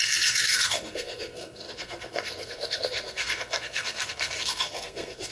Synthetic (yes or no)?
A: yes